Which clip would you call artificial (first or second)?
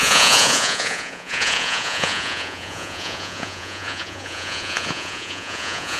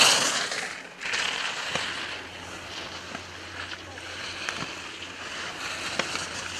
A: first